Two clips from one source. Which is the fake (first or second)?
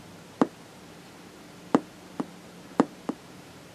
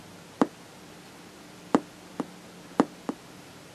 first